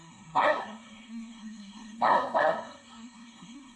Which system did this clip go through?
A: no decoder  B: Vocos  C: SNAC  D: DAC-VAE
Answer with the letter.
C